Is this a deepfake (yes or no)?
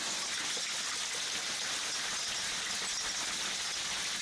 no